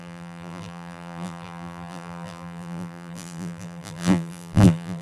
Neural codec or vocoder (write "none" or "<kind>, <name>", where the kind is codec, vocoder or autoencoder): vocoder, BigVGAN v2